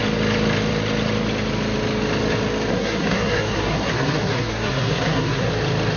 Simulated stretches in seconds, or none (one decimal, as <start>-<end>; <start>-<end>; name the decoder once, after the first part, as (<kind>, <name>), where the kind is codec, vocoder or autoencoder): 2.7-5.5 (codec, SNAC)

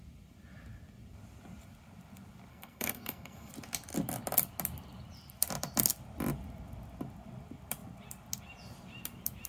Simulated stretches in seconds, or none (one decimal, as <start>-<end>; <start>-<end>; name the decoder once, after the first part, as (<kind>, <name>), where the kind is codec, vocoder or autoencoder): 2.5-3.5 (codec, SNAC)

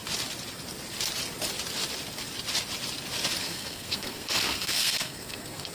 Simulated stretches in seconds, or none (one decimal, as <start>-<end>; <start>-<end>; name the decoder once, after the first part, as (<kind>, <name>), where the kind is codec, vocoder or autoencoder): 3.4-5.7 (codec, SNAC)

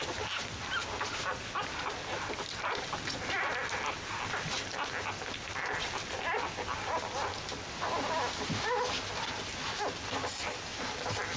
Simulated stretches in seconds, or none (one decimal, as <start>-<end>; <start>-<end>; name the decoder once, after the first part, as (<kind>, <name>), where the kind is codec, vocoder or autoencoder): none